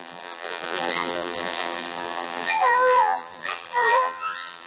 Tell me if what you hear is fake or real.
fake